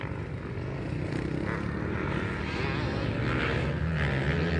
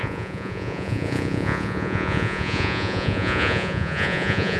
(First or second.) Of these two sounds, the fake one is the second